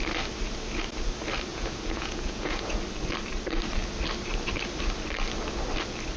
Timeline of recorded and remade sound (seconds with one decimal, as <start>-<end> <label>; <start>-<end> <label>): 0.0-1.5 recorded; 1.5-2.8 remade; 2.8-6.2 recorded